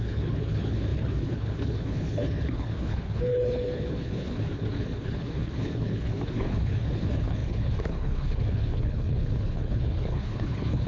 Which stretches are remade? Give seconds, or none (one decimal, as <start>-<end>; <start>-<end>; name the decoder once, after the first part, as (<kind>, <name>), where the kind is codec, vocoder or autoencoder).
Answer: 0.0-10.9 (codec, HILCodec)